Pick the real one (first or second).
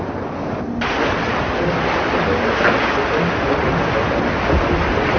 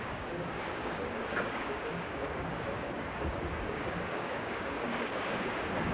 first